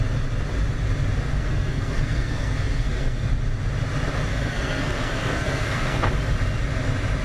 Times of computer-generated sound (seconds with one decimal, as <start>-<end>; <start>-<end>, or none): 1.3-3.3; 4.3-6.1